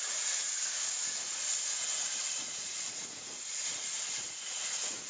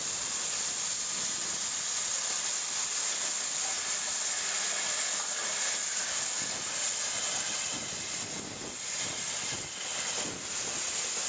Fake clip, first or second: first